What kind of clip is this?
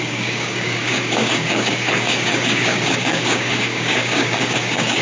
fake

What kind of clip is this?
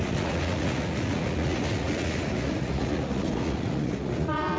fake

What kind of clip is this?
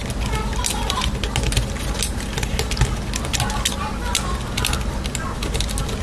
real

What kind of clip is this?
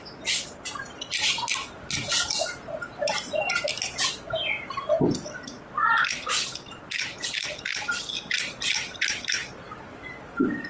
real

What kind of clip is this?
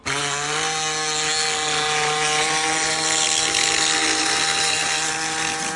real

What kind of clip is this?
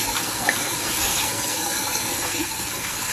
fake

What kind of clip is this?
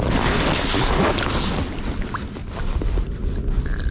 real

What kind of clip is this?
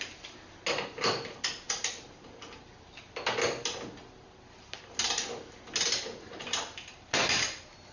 real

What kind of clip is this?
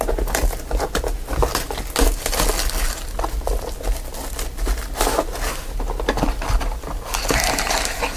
real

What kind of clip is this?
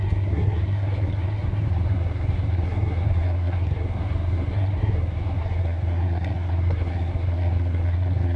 fake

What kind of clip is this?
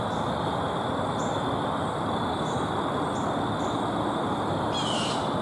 real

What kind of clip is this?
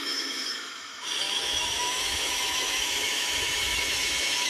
fake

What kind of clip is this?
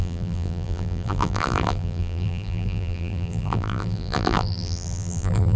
fake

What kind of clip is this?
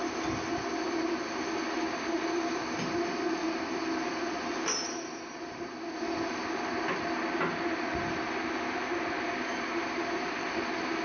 real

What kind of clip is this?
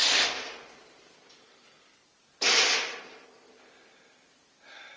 real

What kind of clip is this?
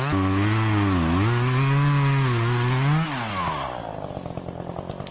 real